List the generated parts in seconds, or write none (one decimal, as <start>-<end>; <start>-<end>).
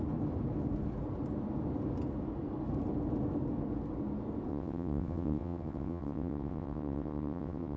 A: 4.5-7.8